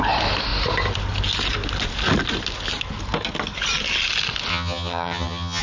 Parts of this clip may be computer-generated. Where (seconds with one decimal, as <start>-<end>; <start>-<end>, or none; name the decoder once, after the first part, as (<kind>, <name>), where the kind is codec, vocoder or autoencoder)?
4.5-5.6 (vocoder, HiFi-GAN)